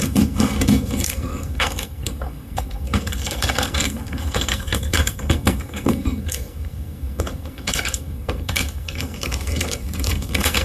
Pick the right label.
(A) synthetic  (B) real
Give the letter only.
A